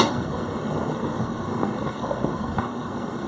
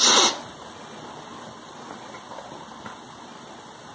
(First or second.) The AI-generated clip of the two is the first